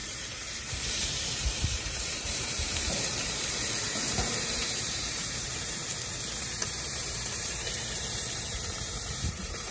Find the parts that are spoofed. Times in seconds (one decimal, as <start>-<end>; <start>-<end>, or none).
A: 0.0-5.9; 6.4-9.7